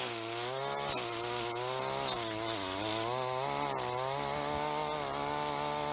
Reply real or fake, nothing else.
real